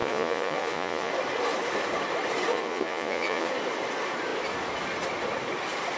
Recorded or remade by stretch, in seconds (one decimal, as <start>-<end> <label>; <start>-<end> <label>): 0.0-1.1 remade; 1.1-2.5 recorded; 2.5-3.5 remade; 3.5-6.0 recorded